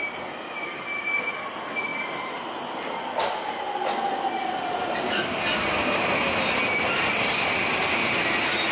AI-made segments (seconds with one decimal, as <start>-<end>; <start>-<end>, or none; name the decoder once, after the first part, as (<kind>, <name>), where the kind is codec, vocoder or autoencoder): none